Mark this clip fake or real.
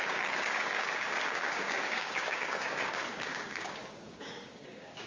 fake